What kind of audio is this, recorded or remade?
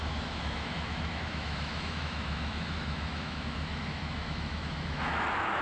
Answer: remade